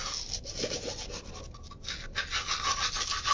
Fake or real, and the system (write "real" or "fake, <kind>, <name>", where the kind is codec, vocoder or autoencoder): real